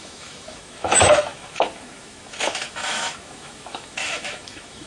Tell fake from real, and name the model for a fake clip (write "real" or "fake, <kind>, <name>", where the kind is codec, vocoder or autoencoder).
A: fake, autoencoder, DAC-VAE